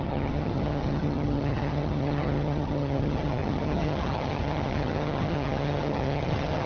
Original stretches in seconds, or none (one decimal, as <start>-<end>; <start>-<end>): none

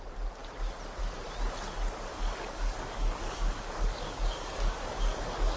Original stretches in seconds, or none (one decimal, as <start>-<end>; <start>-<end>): 0.0-2.1

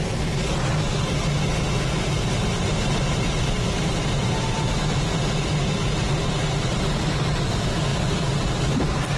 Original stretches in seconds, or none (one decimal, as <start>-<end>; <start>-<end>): 0.0-7.9

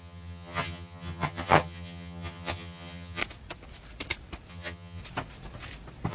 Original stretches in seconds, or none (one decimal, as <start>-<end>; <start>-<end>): 3.2-4.5; 5.0-6.1

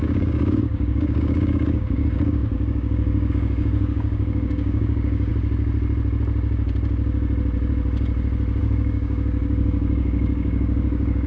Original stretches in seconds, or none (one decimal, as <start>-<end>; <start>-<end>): 5.3-8.6

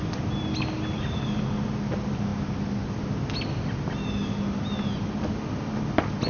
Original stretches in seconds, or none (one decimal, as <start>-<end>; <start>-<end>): 0.0-6.3